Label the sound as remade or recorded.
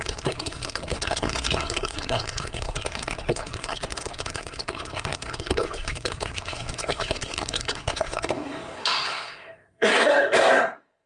remade